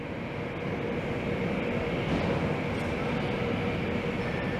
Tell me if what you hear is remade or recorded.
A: recorded